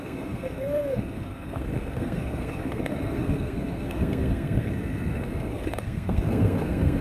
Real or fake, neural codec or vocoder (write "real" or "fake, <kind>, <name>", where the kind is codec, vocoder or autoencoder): fake, codec, SNAC